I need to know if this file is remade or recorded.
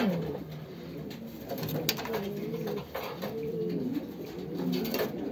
recorded